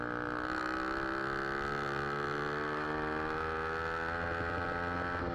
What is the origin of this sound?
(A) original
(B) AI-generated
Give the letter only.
A